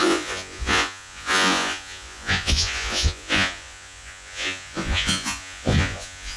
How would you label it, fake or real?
fake